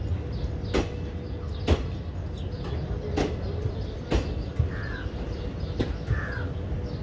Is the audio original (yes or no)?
yes